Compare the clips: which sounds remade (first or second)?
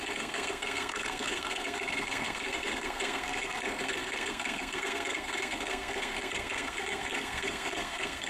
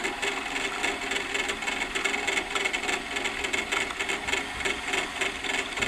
first